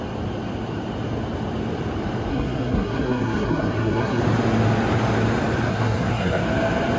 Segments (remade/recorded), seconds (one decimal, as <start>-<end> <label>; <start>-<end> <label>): 0.0-2.3 recorded; 2.3-4.2 remade; 4.2-5.7 recorded; 5.7-6.4 remade; 6.4-7.0 recorded

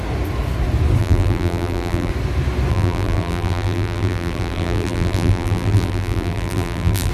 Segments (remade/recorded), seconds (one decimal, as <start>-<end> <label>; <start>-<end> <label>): 0.0-1.0 recorded; 1.0-2.1 remade; 2.1-2.7 recorded; 2.7-7.1 remade